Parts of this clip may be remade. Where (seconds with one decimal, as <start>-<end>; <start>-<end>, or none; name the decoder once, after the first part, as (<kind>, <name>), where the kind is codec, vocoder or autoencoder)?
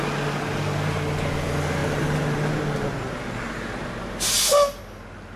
none